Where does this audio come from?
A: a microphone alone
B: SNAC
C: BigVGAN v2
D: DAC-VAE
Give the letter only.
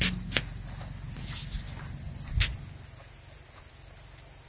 A